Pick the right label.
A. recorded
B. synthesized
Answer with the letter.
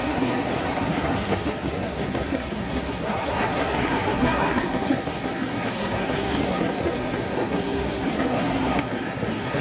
B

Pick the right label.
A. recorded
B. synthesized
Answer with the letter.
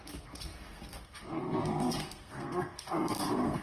B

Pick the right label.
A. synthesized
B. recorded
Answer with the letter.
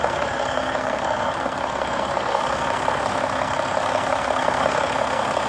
A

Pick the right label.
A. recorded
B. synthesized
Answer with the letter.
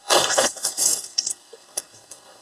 B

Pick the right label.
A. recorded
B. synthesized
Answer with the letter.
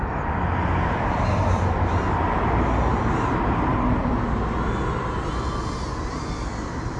A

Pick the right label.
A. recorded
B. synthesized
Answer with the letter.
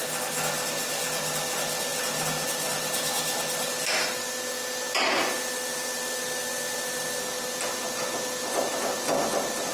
A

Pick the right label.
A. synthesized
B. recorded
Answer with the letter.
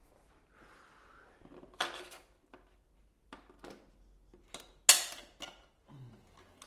B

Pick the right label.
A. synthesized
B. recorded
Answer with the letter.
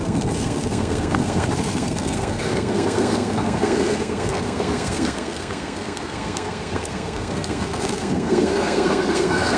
A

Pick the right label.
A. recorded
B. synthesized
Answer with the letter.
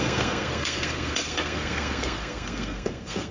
B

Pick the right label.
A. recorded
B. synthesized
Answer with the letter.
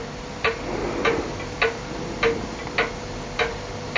A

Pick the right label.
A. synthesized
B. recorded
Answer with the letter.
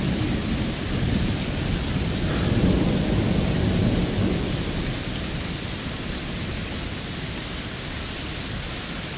B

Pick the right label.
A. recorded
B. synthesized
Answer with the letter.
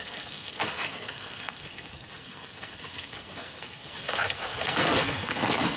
B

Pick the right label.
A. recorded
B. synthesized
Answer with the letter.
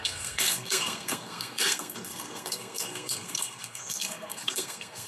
B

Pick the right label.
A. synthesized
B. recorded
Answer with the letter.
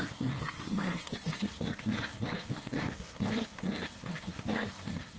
A